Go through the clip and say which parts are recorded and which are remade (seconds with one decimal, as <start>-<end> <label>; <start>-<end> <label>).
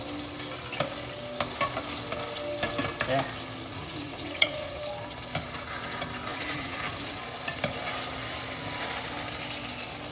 0.0-3.7 recorded; 3.7-4.8 remade; 4.8-6.3 recorded; 6.3-7.2 remade; 7.2-10.1 recorded